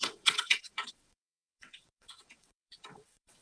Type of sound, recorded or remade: remade